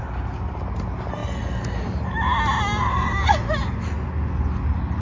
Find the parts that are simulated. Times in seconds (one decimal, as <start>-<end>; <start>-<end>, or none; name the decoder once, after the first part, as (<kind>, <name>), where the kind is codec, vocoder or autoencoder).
none